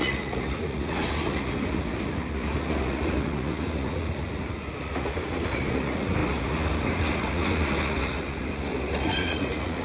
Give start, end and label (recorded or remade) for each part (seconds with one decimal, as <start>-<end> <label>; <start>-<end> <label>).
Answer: 0.0-9.8 remade